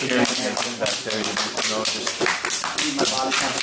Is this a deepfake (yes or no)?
no